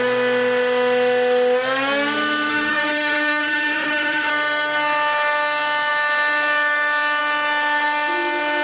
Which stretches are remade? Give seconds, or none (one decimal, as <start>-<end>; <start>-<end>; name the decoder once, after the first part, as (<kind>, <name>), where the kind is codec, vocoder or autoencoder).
2.5-4.3 (autoencoder, DAC-VAE)